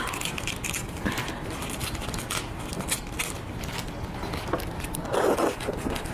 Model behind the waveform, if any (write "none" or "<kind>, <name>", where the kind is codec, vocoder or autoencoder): none